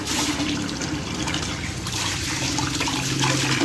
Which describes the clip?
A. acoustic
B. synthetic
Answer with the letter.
A